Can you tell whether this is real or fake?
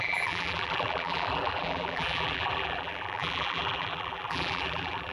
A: fake